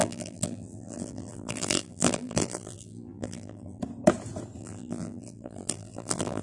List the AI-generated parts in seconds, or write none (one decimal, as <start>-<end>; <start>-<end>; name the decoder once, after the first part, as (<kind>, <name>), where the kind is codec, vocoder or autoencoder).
0.0-3.8 (vocoder, BigVGAN v2); 4.6-6.4